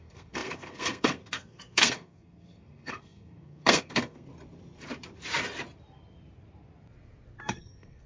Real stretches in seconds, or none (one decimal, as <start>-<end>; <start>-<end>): 4.3-7.4